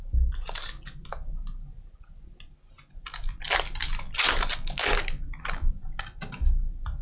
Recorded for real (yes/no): yes